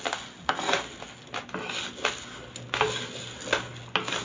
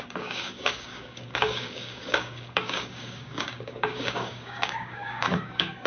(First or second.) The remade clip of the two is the second